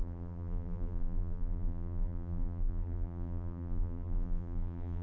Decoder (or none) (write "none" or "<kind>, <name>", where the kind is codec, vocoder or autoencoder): vocoder, BigVGAN v2